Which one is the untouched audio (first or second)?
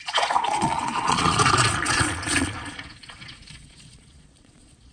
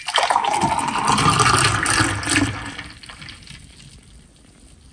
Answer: second